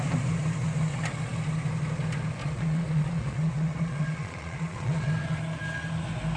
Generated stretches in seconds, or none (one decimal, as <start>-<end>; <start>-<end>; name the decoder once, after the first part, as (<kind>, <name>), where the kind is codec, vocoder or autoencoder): 2.4-5.1 (vocoder, Vocos)